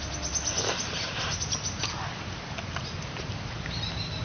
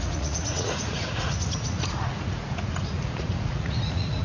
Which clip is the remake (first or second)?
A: second